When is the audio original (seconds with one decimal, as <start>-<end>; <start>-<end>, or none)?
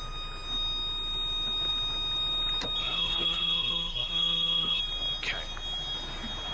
0.0-2.8; 4.8-6.5